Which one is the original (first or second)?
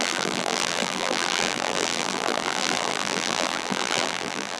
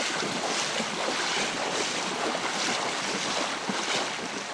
second